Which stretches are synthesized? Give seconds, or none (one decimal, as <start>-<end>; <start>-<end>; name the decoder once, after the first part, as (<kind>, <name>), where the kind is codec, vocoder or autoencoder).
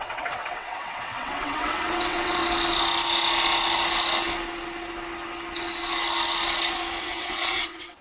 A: 0.0-2.4 (vocoder, WaveNeXt); 7.0-8.0